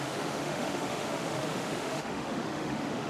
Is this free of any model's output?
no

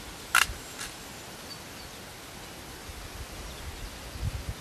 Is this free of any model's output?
yes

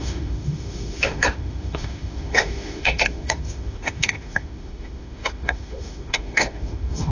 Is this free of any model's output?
no